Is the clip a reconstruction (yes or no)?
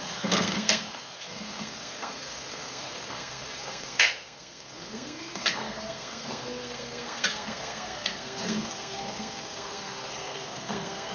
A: yes